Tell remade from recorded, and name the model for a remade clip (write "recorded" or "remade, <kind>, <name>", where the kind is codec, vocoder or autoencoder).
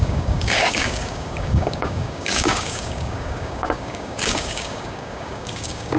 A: remade, codec, DAC